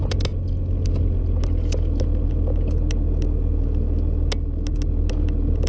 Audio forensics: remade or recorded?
recorded